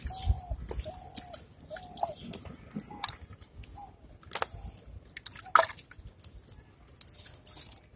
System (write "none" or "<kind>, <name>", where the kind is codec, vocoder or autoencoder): none